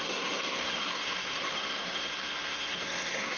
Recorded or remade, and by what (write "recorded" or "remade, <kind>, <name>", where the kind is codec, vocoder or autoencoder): remade, codec, SNAC